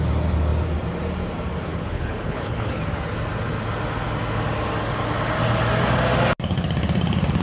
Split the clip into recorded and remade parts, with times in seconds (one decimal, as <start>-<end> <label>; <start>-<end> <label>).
0.0-1.7 recorded; 1.7-2.8 remade; 2.8-7.4 recorded